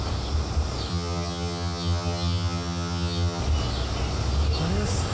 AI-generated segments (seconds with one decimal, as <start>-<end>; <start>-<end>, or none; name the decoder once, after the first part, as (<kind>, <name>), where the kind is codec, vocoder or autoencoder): 0.9-3.4 (vocoder, HiFi-GAN)